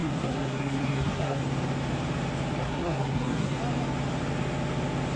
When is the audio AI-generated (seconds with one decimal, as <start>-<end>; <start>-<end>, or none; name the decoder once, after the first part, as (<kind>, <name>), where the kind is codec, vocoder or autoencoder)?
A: 0.0-1.4 (codec, SNAC); 2.6-3.6